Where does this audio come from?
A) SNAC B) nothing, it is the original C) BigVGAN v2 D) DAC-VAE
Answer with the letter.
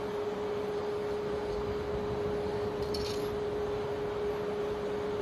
B